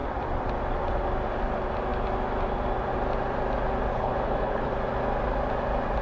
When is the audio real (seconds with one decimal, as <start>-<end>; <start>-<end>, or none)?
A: 0.0-3.9; 4.7-6.0

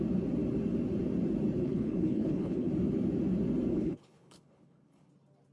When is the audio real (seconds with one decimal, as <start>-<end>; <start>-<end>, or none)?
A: 0.0-1.6; 2.7-3.7; 5.1-5.5

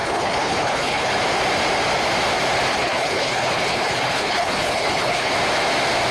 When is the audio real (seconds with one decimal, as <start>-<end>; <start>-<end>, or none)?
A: 1.1-2.7; 5.3-6.1

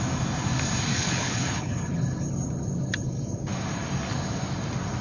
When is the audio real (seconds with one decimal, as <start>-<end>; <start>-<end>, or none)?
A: 0.0-0.9; 1.7-5.0

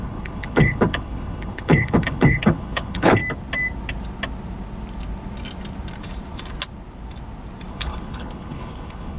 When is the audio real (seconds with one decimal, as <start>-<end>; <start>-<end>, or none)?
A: 3.2-7.7

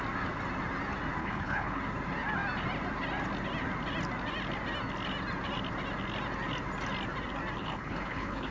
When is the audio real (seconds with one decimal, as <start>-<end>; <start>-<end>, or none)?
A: 0.0-1.2; 1.8-7.6

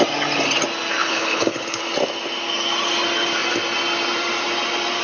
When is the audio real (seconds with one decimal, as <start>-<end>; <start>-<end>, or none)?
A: 0.0-1.0; 1.8-5.0

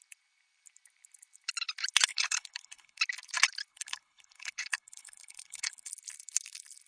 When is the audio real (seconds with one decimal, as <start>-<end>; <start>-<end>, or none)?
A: 0.0-2.1; 3.0-3.7; 5.9-6.9